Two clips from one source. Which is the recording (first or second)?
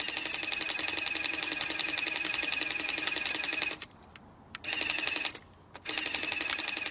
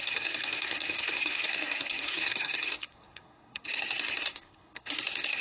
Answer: first